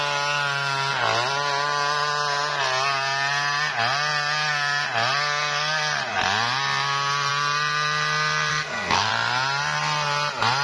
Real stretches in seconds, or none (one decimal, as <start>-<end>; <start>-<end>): 0.0-8.5; 9.1-10.6